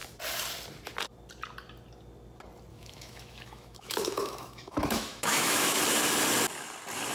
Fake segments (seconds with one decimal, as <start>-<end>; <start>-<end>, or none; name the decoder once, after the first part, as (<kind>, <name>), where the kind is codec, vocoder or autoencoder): 2.7-5.8 (autoencoder, DAC-VAE)